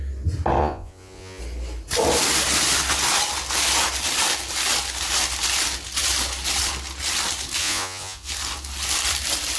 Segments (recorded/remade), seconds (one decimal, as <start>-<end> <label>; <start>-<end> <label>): 0.0-0.6 recorded; 0.6-1.4 remade; 1.4-7.6 recorded; 7.6-8.3 remade; 8.3-9.6 recorded